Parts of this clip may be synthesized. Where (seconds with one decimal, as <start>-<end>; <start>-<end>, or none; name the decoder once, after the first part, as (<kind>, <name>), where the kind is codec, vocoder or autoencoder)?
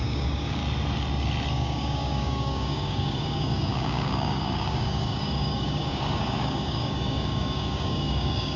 0.0-0.6 (codec, DAC); 1.5-8.6